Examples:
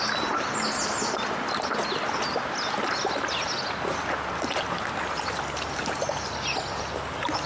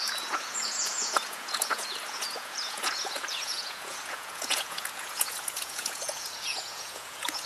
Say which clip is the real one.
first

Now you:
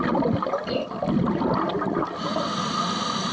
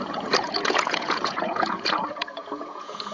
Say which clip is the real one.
first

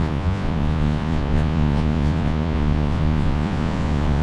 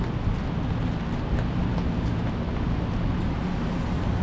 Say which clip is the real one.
second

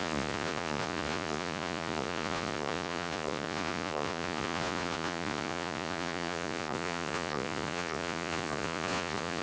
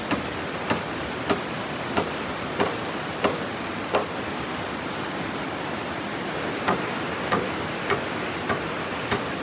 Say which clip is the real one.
second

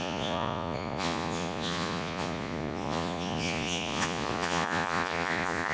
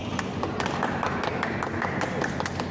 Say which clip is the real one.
second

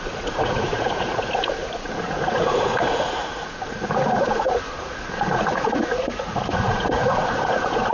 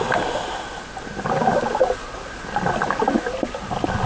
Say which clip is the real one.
second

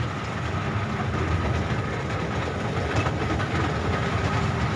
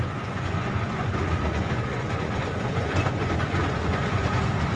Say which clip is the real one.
first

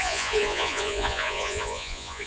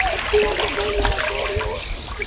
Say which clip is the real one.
second